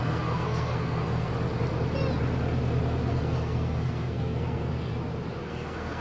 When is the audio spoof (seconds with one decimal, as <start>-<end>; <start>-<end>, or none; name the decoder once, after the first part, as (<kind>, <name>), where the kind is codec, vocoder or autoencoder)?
0.0-1.3 (codec, SNAC); 3.1-4.9; 5.4-6.0

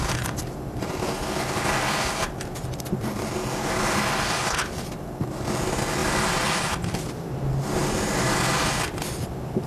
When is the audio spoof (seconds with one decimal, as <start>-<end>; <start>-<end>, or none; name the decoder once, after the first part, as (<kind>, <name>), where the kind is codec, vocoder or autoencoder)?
none

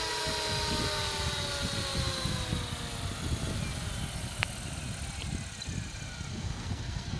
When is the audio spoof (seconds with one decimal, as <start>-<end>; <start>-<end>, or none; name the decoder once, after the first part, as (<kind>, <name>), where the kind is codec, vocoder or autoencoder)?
6.3-7.2 (codec, SNAC)

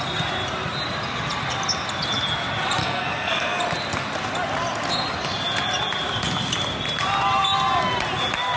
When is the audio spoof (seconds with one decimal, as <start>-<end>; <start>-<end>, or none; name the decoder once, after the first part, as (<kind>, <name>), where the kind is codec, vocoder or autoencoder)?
2.8-3.6 (codec, SNAC)